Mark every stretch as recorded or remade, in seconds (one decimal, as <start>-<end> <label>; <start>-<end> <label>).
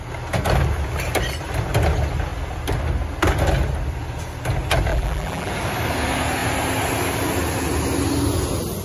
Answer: 0.0-4.9 recorded; 4.9-5.5 remade; 5.5-8.8 recorded